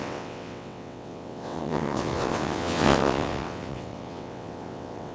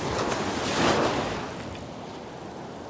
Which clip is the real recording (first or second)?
second